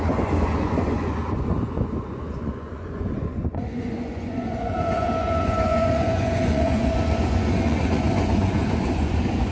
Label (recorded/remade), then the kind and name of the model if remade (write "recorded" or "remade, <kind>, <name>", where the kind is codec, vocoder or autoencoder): remade, vocoder, Vocos